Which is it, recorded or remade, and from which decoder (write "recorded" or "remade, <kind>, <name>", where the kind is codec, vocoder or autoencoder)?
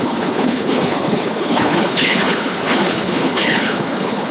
remade, codec, HILCodec